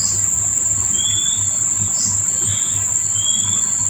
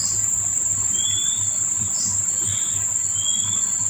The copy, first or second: second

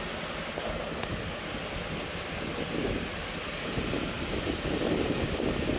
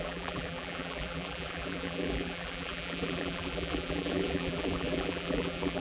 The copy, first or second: second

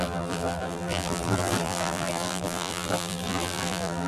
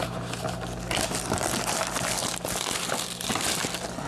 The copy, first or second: first